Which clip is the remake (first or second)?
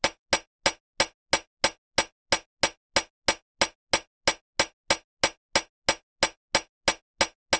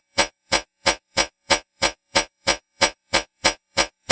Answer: second